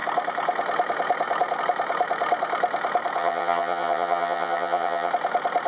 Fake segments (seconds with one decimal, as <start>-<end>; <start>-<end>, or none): 3.2-5.1